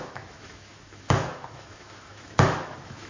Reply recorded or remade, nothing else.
remade